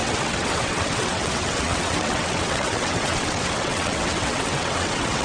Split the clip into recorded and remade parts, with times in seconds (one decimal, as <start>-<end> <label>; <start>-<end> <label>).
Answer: 0.0-5.2 remade